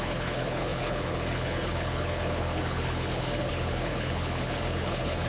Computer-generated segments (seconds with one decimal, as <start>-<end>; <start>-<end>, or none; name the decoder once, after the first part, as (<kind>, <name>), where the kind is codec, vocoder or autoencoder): 0.0-5.3 (codec, HILCodec)

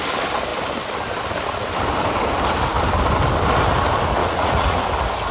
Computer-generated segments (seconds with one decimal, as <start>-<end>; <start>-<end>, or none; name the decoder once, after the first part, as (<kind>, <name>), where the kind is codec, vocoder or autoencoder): 4.2-4.8 (vocoder, Vocos)